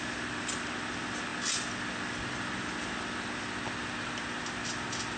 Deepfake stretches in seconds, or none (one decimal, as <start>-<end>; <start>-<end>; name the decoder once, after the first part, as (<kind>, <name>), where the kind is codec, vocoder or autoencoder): none